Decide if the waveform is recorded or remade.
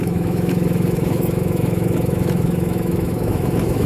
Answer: remade